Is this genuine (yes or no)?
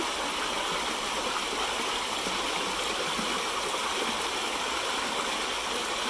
yes